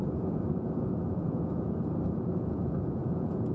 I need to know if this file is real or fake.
fake